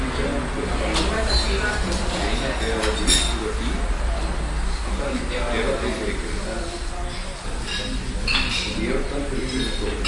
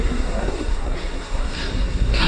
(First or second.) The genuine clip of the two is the first